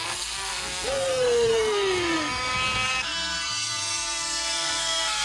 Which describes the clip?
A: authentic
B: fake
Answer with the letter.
B